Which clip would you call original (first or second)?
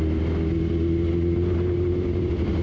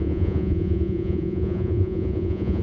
first